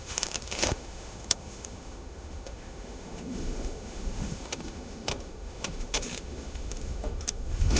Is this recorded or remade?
remade